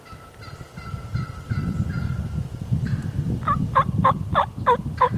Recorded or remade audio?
recorded